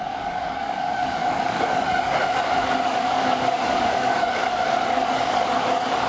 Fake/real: fake